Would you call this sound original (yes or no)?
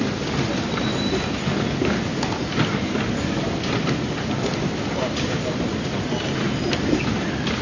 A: yes